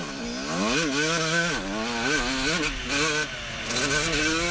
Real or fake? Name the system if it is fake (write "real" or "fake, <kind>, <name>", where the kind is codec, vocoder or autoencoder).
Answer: real